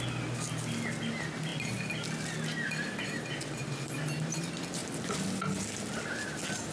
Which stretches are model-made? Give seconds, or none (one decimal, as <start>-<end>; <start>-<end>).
none